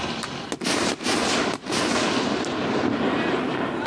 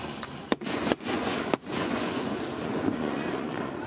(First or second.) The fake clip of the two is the second